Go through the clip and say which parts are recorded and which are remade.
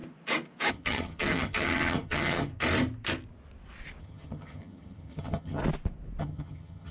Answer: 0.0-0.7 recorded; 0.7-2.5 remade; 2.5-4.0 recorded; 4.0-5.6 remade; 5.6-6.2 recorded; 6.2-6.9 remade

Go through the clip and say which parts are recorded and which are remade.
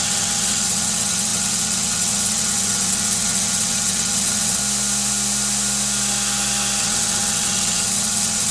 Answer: 0.0-4.6 remade; 4.6-6.8 recorded; 6.8-8.5 remade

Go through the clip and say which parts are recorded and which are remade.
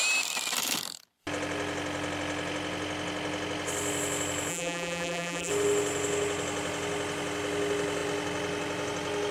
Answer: 0.0-4.5 recorded; 4.5-5.5 remade; 5.5-9.3 recorded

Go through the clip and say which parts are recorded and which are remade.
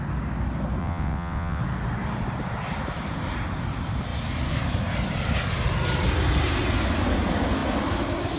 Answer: 0.0-0.8 recorded; 0.8-1.6 remade; 1.6-8.4 recorded